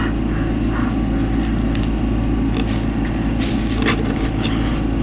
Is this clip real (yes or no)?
yes